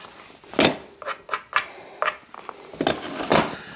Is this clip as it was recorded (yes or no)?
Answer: yes